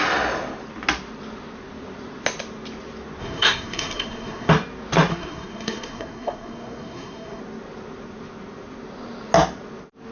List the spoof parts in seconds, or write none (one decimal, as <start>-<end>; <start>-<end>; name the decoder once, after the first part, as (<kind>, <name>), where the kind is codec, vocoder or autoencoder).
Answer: 3.2-4.5 (codec, SNAC); 5.1-7.4